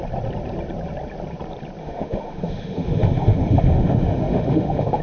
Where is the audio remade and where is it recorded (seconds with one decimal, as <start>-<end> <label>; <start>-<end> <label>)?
0.0-1.8 recorded; 1.8-5.0 remade